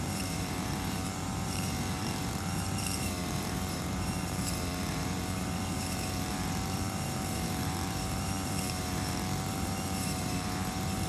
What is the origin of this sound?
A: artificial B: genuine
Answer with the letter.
A